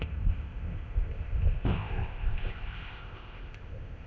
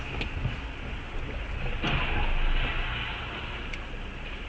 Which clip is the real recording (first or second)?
second